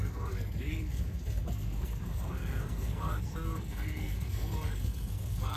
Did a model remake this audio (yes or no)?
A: yes